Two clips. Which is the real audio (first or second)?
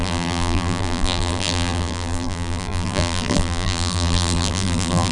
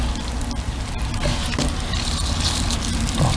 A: second